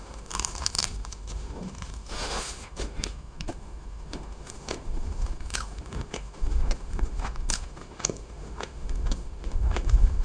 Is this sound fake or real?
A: fake